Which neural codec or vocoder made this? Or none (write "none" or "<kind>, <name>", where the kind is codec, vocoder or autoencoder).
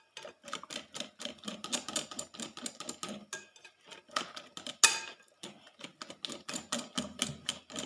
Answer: none